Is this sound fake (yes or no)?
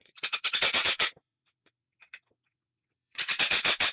yes